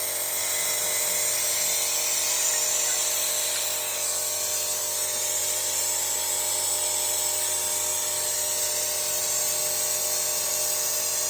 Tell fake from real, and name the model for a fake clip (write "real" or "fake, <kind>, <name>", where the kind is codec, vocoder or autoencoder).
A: real